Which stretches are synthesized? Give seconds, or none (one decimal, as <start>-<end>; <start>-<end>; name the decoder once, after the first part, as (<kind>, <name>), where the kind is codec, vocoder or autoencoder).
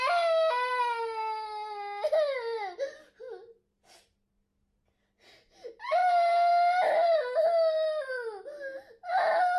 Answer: none